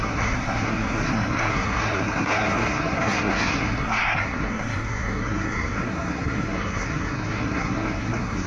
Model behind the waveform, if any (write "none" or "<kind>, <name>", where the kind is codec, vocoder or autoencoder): codec, SNAC